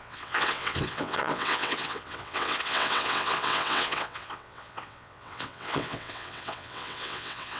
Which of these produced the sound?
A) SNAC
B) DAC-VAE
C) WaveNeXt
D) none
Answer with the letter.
C